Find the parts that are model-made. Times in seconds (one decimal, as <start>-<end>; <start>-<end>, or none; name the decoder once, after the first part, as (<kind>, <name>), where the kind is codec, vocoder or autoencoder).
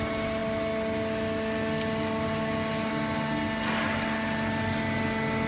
none